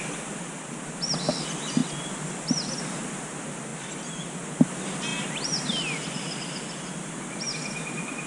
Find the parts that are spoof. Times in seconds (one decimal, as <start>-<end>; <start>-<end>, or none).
none